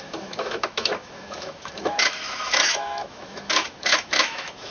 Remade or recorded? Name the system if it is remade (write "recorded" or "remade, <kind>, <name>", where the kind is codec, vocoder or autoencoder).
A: remade, autoencoder, DAC-VAE